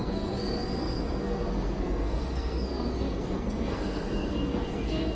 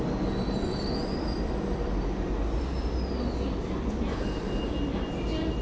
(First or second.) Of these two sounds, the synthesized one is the first